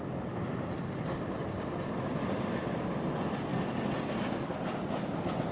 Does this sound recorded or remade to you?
recorded